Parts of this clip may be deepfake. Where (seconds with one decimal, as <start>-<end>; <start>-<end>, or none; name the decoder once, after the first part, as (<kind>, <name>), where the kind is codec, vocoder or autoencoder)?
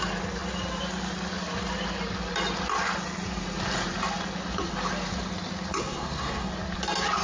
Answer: 5.8-6.5 (codec, SNAC)